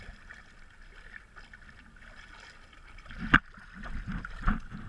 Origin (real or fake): real